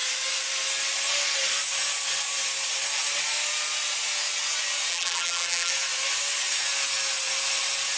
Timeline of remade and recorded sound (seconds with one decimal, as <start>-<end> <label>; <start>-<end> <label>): 0.0-4.9 recorded; 4.9-5.7 remade; 5.7-8.0 recorded